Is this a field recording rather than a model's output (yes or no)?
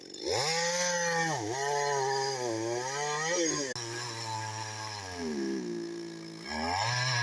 yes